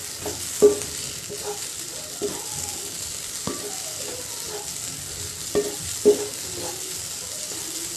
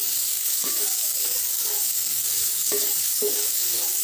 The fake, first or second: second